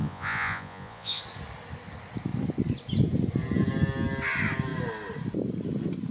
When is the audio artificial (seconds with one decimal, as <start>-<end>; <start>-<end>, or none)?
0.0-1.2